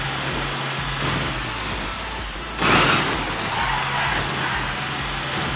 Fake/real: real